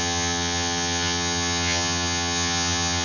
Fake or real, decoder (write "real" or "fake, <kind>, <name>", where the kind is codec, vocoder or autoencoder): fake, vocoder, HiFi-GAN